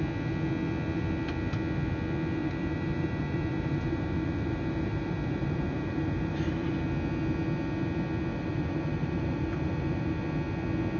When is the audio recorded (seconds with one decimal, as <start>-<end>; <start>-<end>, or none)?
0.0-2.4; 6.7-8.3; 10.2-11.0